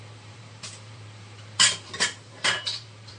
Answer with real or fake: fake